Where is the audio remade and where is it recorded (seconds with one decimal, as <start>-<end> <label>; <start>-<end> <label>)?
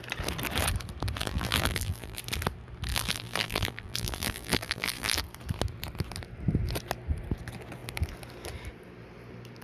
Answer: 0.0-1.2 recorded; 1.2-2.2 remade; 2.2-2.9 recorded; 2.9-5.2 remade; 5.2-9.6 recorded